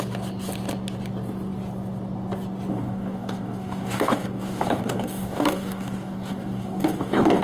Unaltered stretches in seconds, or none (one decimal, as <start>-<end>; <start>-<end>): 0.0-2.7